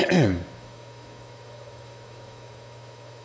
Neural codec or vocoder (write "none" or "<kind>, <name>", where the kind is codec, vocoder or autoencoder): autoencoder, DAC-VAE